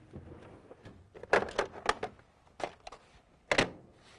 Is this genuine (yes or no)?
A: yes